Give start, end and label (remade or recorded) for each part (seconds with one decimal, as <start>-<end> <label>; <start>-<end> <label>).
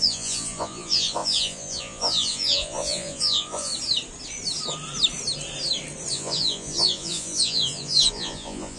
0.0-3.7 remade; 3.7-6.1 recorded; 6.1-8.8 remade